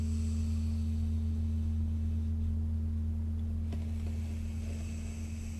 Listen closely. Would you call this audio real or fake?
real